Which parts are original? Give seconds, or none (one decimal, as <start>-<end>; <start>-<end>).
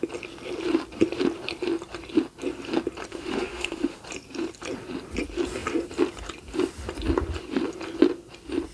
0.0-3.1; 4.0-8.7